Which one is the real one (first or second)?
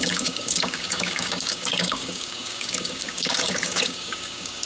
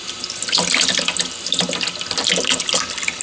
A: second